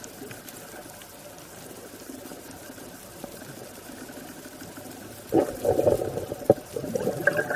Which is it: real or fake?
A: real